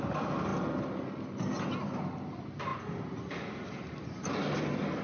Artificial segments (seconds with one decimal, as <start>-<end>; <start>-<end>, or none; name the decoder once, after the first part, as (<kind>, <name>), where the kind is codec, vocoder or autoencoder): none